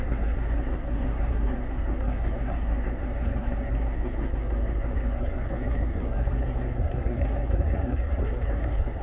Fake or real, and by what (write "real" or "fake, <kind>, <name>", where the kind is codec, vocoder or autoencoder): fake, codec, SNAC